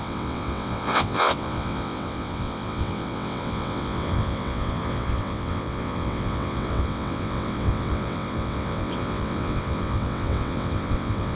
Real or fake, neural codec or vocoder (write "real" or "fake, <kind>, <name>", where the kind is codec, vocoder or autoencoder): fake, vocoder, WaveNeXt